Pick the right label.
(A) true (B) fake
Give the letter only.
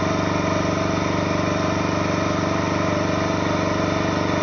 A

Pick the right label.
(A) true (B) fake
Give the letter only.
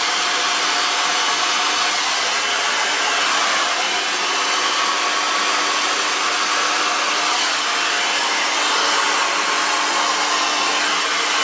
A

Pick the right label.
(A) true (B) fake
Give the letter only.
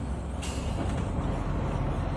A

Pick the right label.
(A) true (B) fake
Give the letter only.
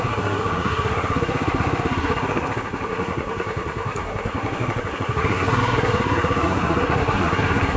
B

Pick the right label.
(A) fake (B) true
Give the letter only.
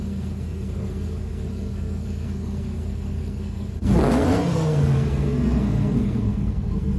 A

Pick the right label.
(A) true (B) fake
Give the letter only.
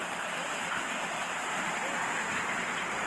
A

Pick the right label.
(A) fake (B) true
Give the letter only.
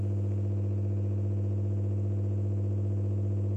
B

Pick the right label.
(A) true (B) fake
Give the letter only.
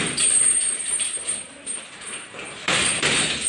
A